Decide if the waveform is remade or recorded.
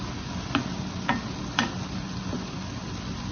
recorded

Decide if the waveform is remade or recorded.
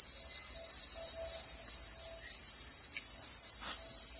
recorded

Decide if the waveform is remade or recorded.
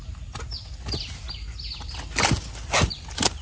recorded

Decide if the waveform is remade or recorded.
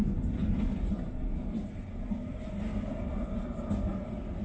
recorded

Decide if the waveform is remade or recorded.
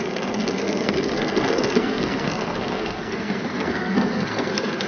remade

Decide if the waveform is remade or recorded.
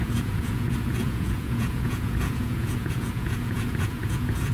remade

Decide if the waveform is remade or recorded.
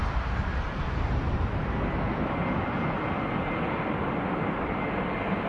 recorded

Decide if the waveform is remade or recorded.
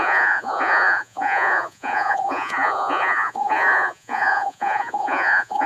remade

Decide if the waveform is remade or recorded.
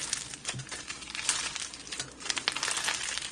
recorded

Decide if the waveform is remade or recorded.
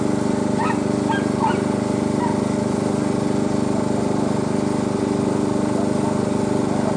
recorded